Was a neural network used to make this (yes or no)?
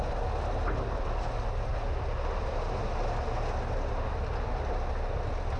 no